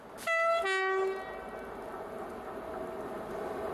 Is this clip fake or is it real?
real